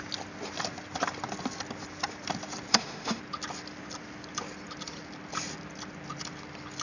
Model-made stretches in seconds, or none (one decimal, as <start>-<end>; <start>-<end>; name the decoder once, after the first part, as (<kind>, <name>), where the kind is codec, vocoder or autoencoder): 2.7-3.2 (autoencoder, DAC-VAE)